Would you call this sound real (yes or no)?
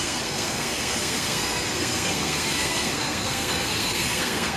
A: no